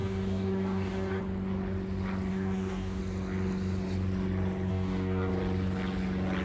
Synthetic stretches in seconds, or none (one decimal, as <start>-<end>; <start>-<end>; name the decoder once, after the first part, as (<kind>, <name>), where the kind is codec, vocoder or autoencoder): 0.0-1.2 (codec, DAC); 2.3-3.0; 4.7-5.3